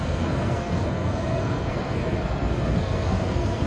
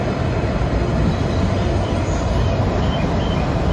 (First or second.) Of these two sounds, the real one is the second